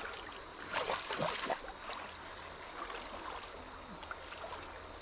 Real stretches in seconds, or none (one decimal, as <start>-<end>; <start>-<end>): 0.0-5.0